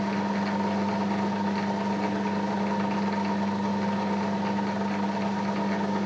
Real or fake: real